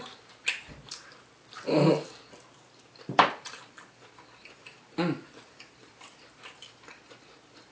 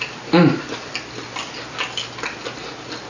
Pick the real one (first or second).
second